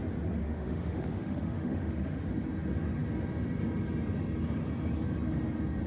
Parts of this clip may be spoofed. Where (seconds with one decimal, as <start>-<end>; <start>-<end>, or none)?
0.4-2.3